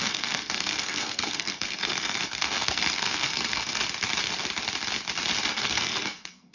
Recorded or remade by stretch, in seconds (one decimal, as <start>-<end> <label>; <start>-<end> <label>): 0.0-3.8 remade; 3.8-5.5 recorded; 5.5-6.5 remade